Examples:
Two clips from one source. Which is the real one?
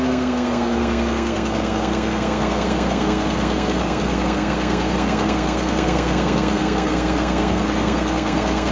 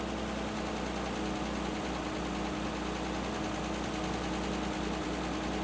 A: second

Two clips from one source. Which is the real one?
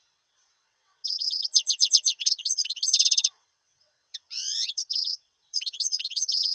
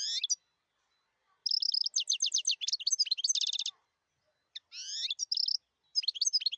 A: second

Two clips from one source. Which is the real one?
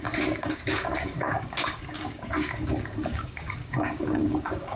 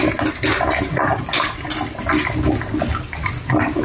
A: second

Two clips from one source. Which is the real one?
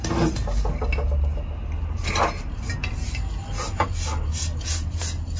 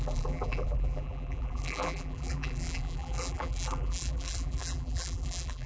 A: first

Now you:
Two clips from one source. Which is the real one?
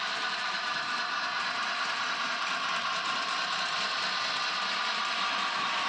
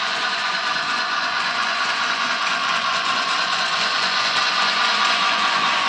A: first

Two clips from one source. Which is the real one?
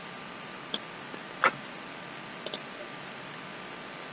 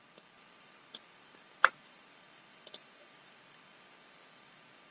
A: first